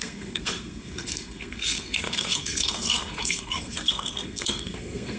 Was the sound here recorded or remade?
remade